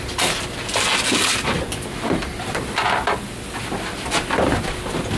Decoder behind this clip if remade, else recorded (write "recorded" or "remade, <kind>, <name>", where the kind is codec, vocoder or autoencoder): recorded